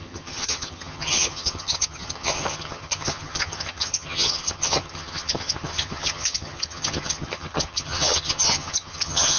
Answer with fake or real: fake